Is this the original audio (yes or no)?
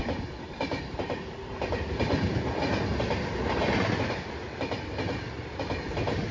yes